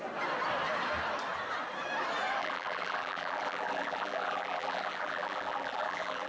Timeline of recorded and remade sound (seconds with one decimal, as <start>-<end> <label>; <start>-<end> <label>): 0.0-2.4 recorded; 2.4-6.3 remade